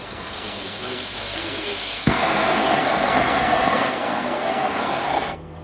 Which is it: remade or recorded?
remade